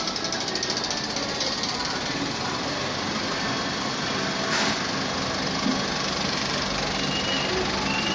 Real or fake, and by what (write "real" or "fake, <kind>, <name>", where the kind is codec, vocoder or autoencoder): real